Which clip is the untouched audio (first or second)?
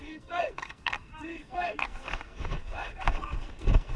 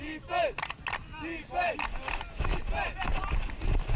second